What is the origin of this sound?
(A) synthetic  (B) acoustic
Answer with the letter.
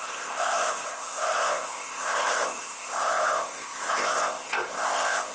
A